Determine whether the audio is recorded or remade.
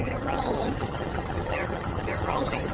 remade